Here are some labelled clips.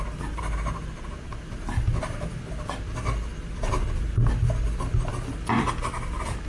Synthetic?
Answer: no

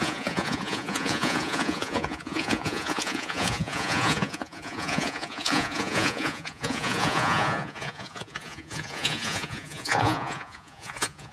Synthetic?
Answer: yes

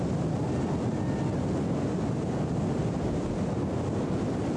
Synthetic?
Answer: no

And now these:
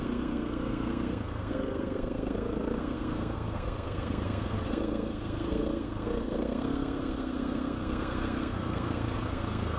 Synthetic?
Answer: yes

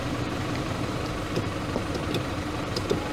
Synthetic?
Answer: yes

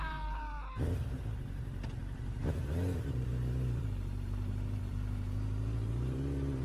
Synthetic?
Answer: yes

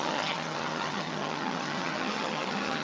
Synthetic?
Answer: yes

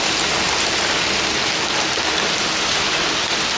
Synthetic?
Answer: no